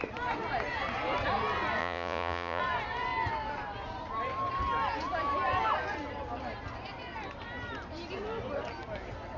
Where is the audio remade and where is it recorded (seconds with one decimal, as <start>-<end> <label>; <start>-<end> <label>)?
0.0-1.8 recorded; 1.8-2.6 remade; 2.6-9.4 recorded